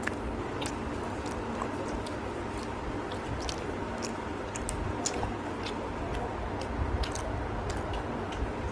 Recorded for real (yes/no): yes